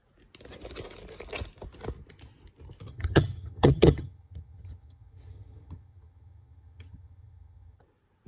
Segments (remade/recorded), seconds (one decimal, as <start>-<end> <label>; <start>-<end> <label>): 0.0-2.9 recorded; 2.9-7.8 remade; 7.8-8.3 recorded